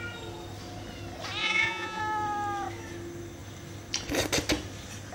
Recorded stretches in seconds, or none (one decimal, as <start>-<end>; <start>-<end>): 0.0-1.4; 2.0-5.1